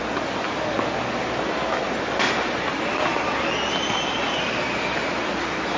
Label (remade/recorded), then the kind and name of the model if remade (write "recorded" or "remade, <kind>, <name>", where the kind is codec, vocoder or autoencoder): recorded